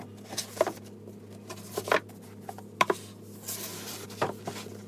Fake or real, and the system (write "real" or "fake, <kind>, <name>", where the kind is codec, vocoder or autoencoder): real